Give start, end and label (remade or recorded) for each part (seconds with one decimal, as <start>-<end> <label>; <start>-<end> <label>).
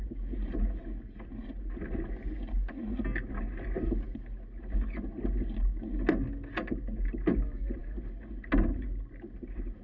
0.0-9.8 recorded